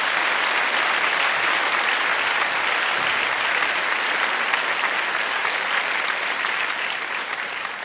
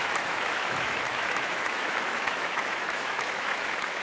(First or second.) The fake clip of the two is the second